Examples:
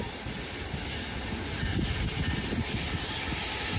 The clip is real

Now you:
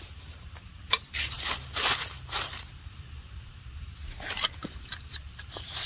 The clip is fake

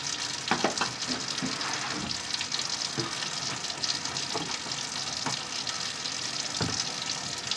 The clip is real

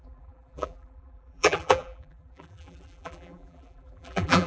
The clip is fake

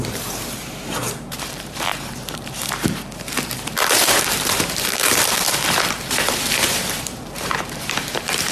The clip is fake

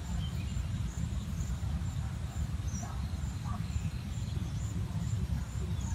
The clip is real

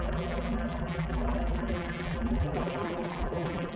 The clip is fake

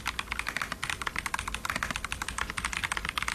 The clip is real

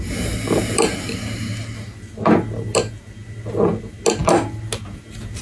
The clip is real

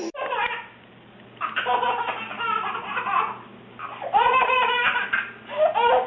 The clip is real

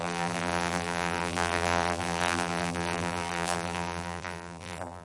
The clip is fake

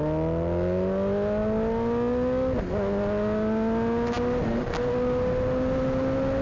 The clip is real